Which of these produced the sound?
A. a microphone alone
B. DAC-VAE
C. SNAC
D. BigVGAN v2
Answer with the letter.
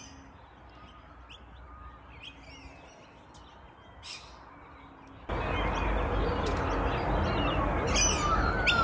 A